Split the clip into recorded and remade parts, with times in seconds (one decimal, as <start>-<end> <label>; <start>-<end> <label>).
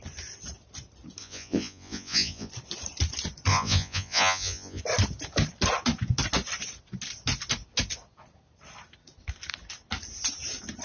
0.0-1.2 recorded; 1.2-2.5 remade; 2.5-3.5 recorded; 3.5-4.8 remade; 4.8-10.8 recorded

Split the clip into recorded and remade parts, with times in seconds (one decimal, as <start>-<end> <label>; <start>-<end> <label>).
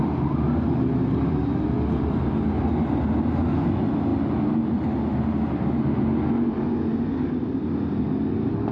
0.0-8.7 recorded